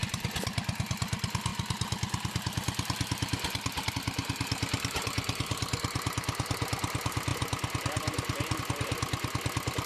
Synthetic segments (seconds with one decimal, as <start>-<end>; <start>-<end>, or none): none